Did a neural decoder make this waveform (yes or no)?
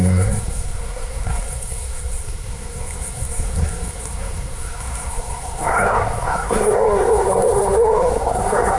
yes